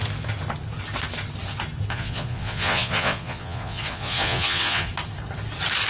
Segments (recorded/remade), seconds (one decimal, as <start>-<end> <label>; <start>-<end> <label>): 0.0-1.9 recorded; 1.9-4.9 remade; 4.9-5.9 recorded